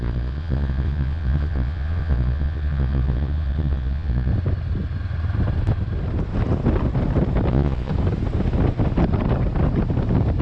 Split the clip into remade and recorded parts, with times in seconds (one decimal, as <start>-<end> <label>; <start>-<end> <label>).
0.0-4.3 remade; 4.3-7.5 recorded; 7.5-7.9 remade; 7.9-10.4 recorded

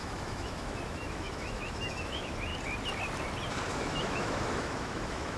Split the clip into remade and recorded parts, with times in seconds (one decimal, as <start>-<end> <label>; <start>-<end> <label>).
0.0-2.5 remade; 2.5-3.7 recorded; 3.7-5.4 remade

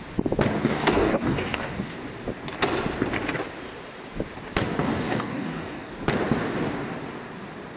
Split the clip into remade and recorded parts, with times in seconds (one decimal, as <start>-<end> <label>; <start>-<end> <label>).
0.0-0.6 recorded; 0.6-2.0 remade; 2.0-4.8 recorded; 4.8-5.9 remade; 5.9-7.8 recorded

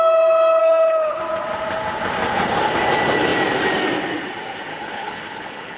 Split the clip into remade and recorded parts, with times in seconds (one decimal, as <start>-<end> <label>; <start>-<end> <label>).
0.0-0.6 recorded; 0.6-1.2 remade; 1.2-4.7 recorded; 4.7-5.8 remade